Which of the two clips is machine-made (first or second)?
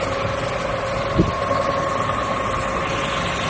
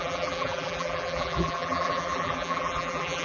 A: second